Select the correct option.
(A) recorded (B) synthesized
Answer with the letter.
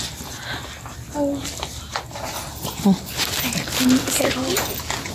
A